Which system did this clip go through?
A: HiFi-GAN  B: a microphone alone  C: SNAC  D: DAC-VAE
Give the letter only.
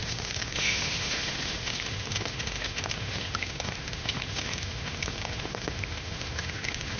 D